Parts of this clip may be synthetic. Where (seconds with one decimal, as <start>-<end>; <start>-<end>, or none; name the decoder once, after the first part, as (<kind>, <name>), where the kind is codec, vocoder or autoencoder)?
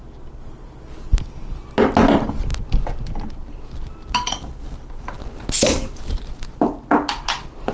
none